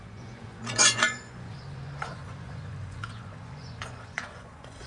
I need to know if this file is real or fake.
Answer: fake